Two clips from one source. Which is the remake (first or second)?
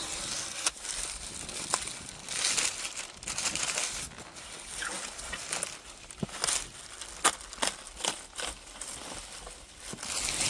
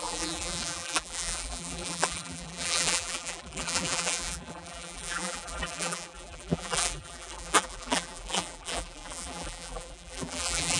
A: second